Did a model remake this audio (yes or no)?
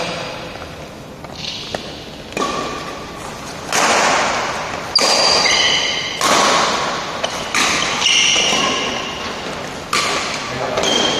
no